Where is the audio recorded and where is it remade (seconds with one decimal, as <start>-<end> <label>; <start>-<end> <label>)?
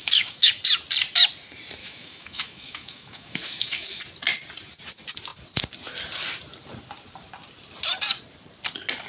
0.0-0.5 remade; 0.5-1.8 recorded; 1.8-4.0 remade; 4.0-9.1 recorded